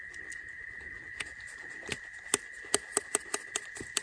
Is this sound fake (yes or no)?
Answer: no